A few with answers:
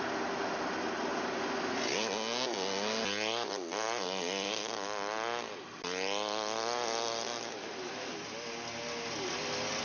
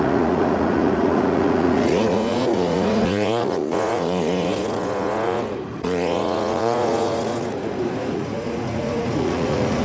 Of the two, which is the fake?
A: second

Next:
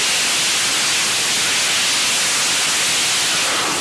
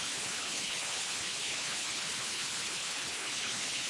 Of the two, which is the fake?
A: second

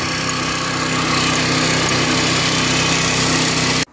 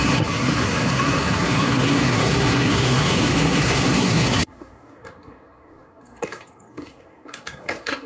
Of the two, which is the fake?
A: second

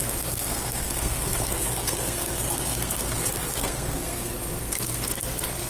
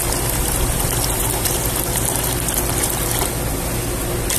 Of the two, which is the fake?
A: first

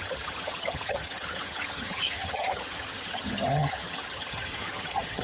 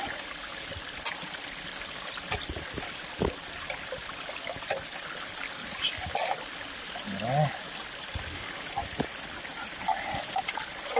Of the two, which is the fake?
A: first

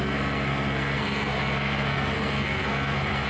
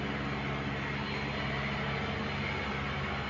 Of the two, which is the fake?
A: first